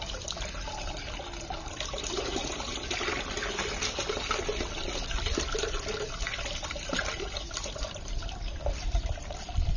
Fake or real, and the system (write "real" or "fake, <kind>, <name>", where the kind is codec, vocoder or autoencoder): real